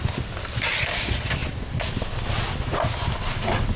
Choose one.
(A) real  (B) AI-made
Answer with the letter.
A